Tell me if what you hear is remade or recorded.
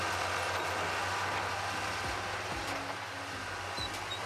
recorded